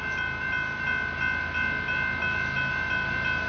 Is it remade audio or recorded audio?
recorded